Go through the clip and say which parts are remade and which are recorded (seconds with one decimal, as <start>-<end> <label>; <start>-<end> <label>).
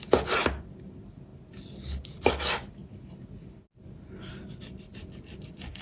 0.0-5.8 recorded